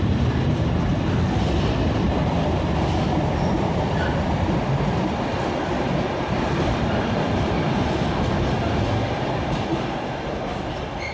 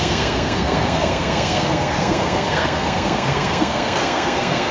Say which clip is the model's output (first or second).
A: second